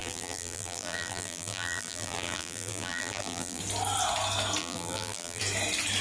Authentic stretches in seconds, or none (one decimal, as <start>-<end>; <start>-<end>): 3.6-4.6; 5.4-6.0